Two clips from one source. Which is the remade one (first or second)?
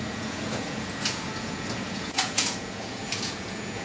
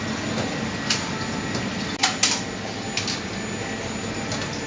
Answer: first